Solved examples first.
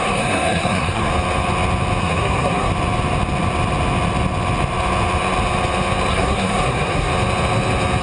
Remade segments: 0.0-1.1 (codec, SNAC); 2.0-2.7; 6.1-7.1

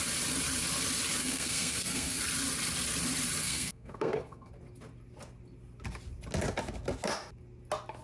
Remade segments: 1.2-2.2 (codec, SNAC); 3.4-4.5

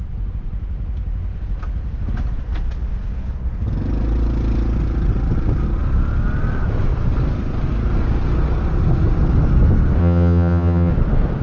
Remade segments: 10.0-10.9 (vocoder, HiFi-GAN)

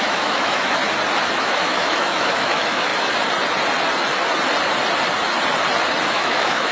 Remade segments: 0.0-0.8 (autoencoder, DAC-VAE); 1.4-2.9; 6.1-6.7

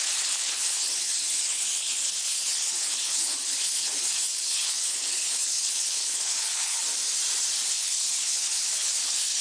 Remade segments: 0.0-6.8 (codec, HILCodec); 7.7-9.4

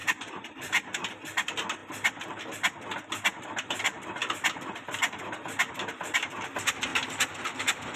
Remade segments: 0.0-1.2 (vocoder, BigVGAN v2)